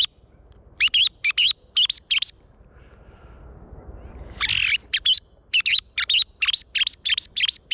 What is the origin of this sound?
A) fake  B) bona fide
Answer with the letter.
B